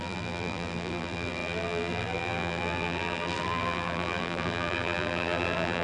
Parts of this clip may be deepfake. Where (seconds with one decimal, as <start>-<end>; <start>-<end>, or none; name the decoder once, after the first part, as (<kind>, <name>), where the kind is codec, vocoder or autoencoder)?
0.0-5.8 (vocoder, BigVGAN v2)